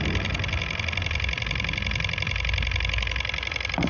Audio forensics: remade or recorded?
recorded